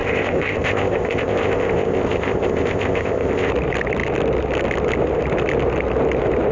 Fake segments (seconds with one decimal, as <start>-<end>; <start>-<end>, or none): 0.0-3.5